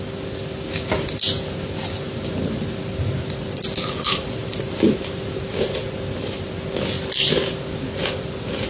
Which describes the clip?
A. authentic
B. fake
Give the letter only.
A